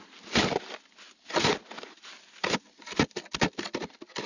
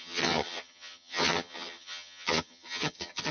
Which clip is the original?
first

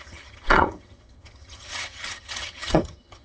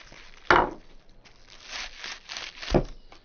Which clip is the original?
second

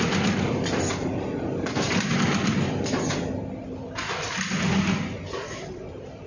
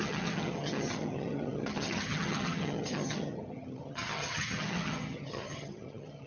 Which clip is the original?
first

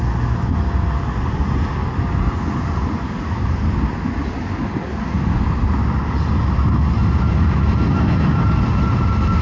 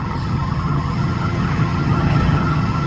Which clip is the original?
first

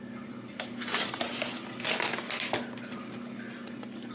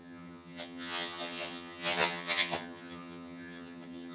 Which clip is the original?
first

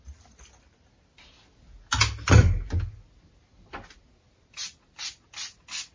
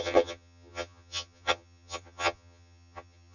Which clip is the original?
first